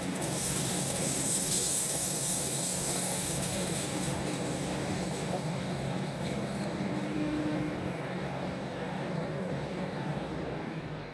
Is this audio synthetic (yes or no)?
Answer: yes